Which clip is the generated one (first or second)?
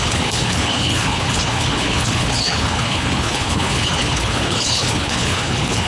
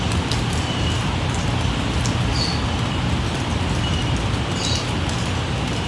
first